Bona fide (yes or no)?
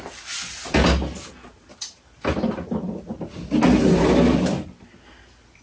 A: yes